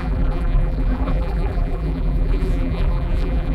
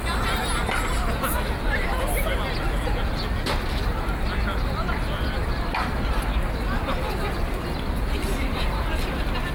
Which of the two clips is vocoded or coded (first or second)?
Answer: first